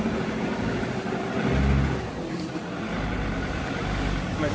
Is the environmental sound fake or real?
real